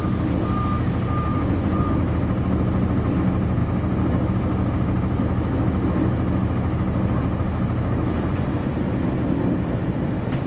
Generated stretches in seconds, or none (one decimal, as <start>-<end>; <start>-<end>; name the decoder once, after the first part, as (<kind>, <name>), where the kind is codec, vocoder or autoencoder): 1.3-1.9 (vocoder, Vocos); 8.1-8.7